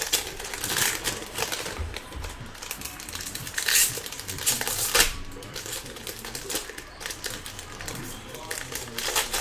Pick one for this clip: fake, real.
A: fake